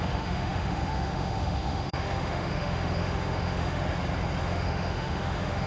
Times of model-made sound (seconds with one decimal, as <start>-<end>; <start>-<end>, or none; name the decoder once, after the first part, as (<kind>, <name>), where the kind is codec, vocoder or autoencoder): 0.0-3.8 (autoencoder, DAC-VAE); 4.4-5.7